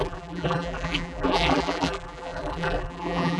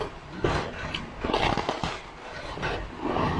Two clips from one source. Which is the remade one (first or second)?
first